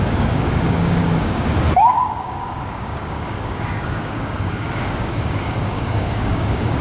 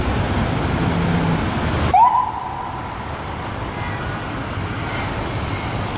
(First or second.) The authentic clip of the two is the second